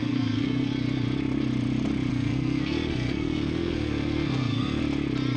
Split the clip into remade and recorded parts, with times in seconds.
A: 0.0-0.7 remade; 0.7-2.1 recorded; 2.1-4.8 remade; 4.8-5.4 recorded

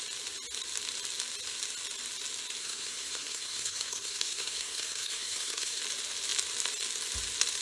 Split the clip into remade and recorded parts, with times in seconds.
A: 0.0-2.6 recorded; 2.6-5.8 remade; 5.8-7.6 recorded

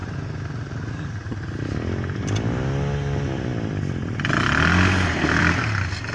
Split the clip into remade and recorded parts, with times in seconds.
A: 0.0-6.1 recorded

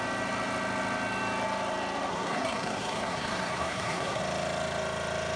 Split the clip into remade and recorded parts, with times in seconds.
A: 0.0-2.1 recorded; 2.1-4.2 remade; 4.2-5.4 recorded

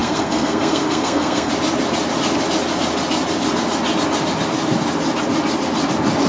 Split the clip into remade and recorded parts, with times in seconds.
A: 0.0-1.5 remade; 1.5-6.3 recorded

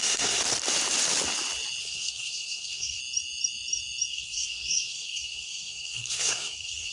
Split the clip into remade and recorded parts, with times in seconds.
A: 0.0-0.4 remade; 0.4-1.8 recorded; 1.8-3.0 remade; 3.0-4.1 recorded; 4.1-6.9 remade

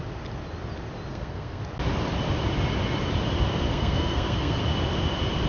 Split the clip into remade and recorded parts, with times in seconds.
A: 0.0-1.1 recorded; 1.1-1.6 remade; 1.6-3.7 recorded; 3.7-4.6 remade; 4.6-5.5 recorded